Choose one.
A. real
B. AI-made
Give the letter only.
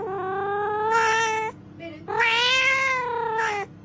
A